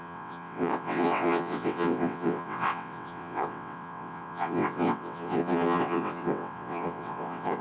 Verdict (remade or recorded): remade